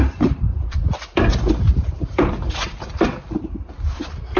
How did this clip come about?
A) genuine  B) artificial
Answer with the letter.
B